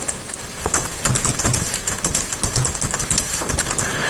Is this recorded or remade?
recorded